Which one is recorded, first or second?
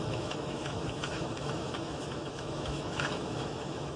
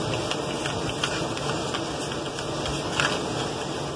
second